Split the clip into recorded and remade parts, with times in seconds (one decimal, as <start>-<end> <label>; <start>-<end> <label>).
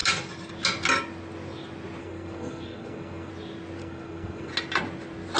0.0-2.0 recorded; 2.0-3.3 remade; 3.3-3.8 recorded; 3.8-4.5 remade; 4.5-5.4 recorded